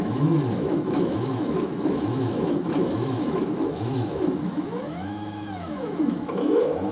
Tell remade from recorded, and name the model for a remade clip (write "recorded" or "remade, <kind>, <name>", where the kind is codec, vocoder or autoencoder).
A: remade, autoencoder, DAC-VAE